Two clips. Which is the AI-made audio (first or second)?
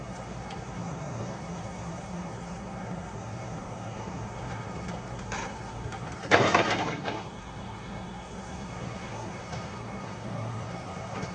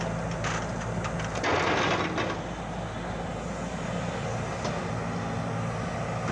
first